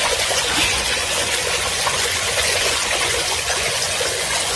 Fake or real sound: fake